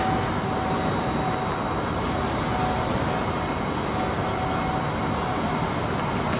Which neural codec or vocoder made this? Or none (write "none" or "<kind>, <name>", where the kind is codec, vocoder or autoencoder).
none